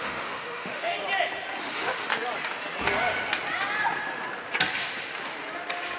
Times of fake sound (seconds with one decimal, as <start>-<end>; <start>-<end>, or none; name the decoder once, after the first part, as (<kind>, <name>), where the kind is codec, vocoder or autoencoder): 0.0-1.0 (autoencoder, DAC-VAE); 1.6-2.1

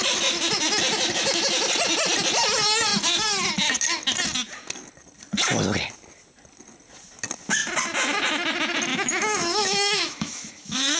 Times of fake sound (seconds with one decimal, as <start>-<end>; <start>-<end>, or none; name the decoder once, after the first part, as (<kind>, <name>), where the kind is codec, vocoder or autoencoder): 8.9-11.0 (autoencoder, DAC-VAE)

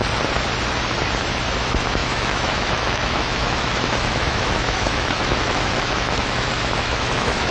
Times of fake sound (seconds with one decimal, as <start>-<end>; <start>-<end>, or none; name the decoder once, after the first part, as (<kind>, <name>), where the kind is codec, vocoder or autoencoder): 1.6-7.5 (autoencoder, DAC-VAE)

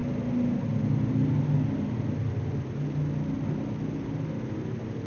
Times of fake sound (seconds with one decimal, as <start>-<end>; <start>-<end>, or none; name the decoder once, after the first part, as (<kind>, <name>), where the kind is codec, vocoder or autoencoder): none

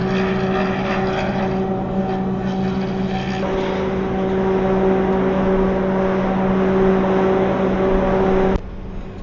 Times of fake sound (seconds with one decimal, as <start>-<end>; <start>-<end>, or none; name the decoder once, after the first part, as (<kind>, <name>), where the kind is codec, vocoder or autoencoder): none

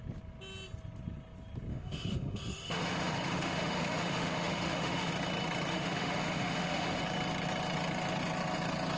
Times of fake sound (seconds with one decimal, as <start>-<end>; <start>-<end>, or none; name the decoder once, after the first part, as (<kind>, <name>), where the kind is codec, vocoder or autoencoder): 1.7-5.1 (autoencoder, DAC-VAE); 5.7-7.0

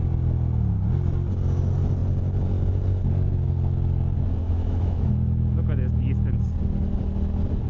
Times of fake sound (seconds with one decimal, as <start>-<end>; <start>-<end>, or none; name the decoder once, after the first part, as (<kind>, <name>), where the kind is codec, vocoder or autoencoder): 4.4-5.1 (autoencoder, DAC-VAE)